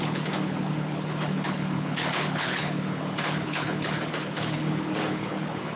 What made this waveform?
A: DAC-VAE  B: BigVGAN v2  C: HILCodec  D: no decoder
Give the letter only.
C